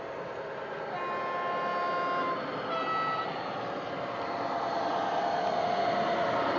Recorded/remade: recorded